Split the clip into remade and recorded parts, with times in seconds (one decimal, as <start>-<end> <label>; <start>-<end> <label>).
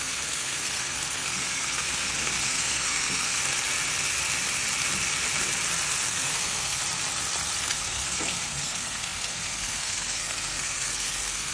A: 0.0-3.4 remade; 3.4-6.1 recorded; 6.1-6.8 remade; 6.8-7.6 recorded; 7.6-11.5 remade